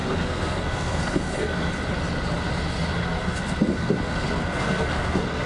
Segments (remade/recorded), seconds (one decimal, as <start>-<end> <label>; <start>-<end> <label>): 0.0-1.7 remade; 1.7-3.0 recorded; 3.0-5.5 remade